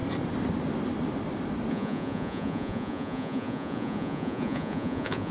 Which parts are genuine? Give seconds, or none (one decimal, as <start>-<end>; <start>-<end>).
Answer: 0.0-1.7